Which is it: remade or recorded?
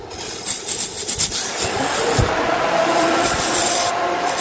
recorded